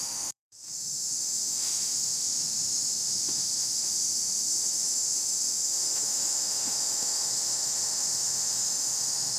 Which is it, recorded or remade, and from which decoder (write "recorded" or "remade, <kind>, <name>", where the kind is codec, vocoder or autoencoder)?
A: remade, autoencoder, DAC-VAE